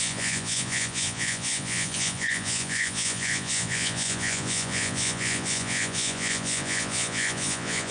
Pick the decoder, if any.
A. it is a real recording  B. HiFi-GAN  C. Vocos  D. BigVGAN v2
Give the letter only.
C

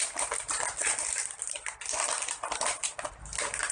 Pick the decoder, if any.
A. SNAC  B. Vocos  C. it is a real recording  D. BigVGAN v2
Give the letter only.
C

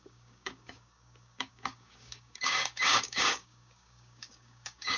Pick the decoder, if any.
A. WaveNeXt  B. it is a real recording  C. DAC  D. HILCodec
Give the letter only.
C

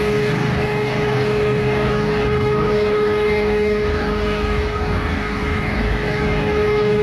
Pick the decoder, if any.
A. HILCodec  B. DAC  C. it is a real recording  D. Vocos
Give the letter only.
B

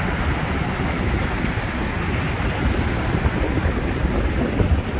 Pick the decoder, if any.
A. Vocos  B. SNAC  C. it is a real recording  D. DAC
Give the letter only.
C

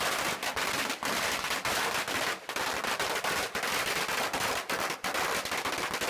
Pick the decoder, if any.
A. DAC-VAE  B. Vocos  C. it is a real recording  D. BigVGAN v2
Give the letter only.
C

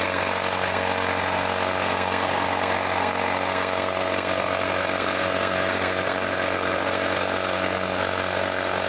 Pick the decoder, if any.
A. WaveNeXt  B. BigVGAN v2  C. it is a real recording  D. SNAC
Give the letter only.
D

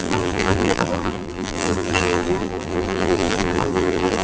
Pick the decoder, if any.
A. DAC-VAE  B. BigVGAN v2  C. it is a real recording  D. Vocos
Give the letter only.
B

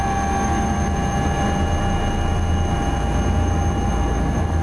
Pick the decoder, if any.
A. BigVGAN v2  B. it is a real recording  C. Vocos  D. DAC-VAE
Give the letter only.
B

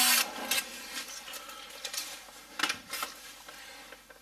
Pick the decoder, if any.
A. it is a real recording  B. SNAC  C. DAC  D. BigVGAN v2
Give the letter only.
A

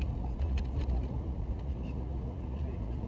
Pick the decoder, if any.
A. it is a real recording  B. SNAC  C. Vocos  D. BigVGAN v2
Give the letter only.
C